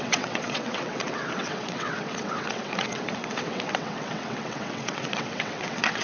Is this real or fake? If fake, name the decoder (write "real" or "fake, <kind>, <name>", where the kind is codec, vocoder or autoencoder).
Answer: fake, vocoder, WaveNeXt